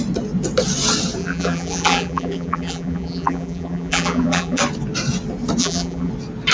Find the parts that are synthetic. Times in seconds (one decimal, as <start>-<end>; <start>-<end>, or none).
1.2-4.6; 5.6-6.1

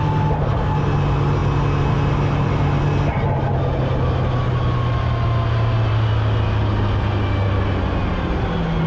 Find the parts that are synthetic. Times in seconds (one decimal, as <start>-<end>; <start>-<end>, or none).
none

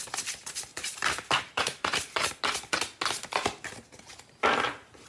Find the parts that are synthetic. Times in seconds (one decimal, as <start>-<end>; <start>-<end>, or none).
0.7-2.3